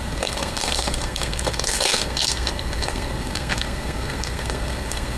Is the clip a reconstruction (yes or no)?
yes